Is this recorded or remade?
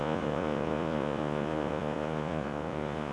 remade